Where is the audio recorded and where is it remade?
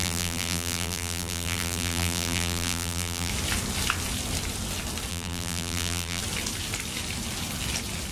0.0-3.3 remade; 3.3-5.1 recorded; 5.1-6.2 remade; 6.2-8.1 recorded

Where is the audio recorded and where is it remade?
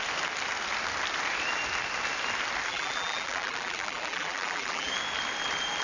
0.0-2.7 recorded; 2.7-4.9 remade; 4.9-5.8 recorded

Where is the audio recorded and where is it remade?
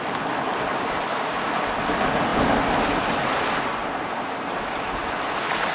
0.0-3.8 recorded; 3.8-5.0 remade; 5.0-5.7 recorded